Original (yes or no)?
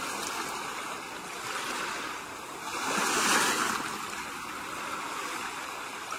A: yes